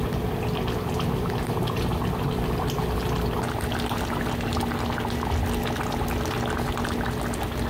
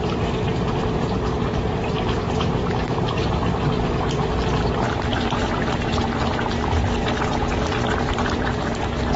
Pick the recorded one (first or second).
first